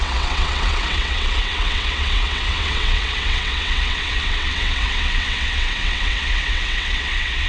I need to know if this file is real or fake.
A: fake